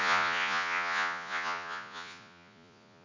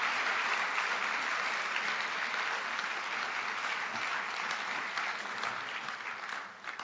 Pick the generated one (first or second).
first